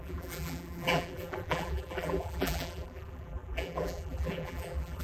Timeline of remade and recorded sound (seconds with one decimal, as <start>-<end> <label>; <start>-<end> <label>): 0.0-5.0 remade